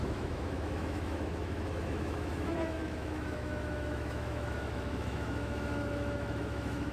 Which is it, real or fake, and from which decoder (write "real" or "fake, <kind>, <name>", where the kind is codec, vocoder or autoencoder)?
fake, autoencoder, DAC-VAE